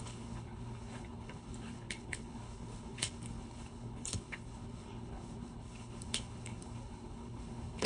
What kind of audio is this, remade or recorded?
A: remade